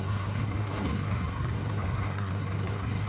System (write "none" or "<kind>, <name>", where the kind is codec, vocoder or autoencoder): codec, SNAC